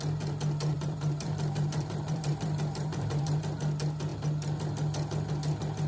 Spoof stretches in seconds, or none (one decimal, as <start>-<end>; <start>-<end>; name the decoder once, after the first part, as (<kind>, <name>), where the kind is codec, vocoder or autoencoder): 0.7-3.4 (vocoder, BigVGAN v2)